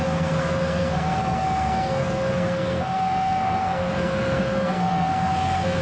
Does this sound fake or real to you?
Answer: fake